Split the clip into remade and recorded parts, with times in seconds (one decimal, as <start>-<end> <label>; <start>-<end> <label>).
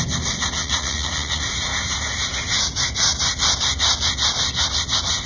0.0-0.6 recorded; 0.6-1.4 remade; 1.4-5.3 recorded